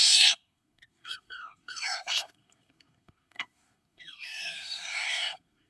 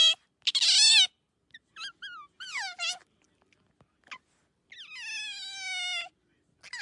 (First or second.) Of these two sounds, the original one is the second